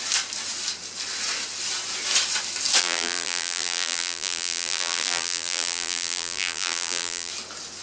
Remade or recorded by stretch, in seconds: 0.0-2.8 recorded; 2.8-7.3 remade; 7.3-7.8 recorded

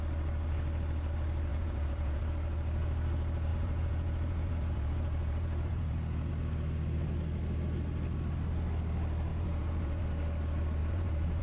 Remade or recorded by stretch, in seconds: 0.0-1.5 recorded; 1.5-2.2 remade; 2.2-3.5 recorded; 3.5-6.3 remade; 6.3-9.3 recorded; 9.3-10.0 remade; 10.0-10.8 recorded; 10.8-11.4 remade

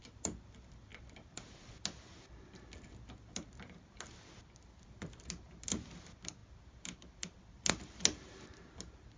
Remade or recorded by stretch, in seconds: 0.0-9.2 recorded

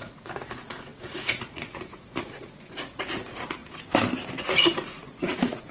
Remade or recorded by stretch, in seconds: 0.0-3.6 remade; 3.6-4.4 recorded; 4.4-5.7 remade

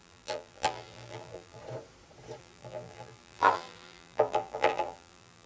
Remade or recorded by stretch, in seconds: 0.0-1.6 remade; 1.6-2.4 recorded; 2.4-5.5 remade

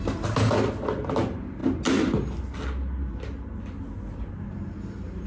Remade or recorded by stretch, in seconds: 0.0-5.3 recorded

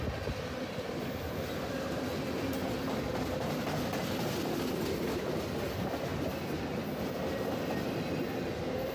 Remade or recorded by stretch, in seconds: 0.0-8.9 recorded

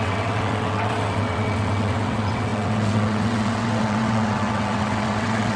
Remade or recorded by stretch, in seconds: 0.0-5.6 remade